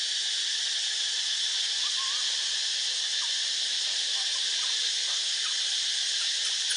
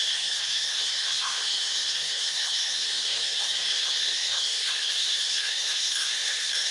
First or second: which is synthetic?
second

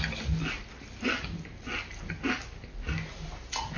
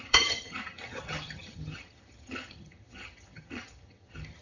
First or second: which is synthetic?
second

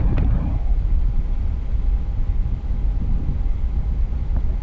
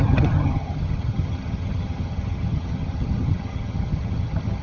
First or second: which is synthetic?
second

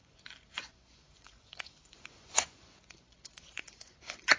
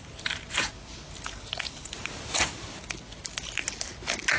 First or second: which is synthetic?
first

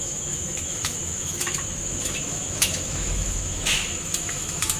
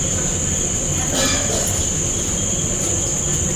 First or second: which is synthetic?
first